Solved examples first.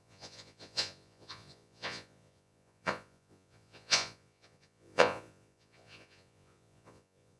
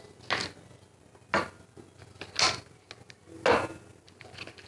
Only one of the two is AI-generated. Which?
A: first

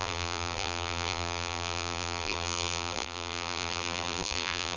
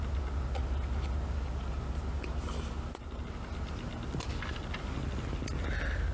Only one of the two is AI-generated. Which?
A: first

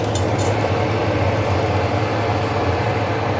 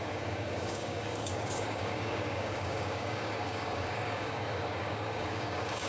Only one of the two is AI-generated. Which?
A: second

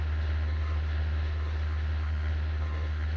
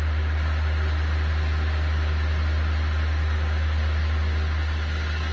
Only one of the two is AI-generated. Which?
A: first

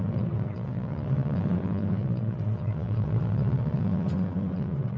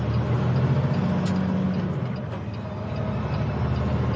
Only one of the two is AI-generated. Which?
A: first